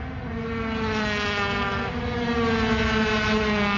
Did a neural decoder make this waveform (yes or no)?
no